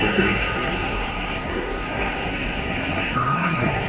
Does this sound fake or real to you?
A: fake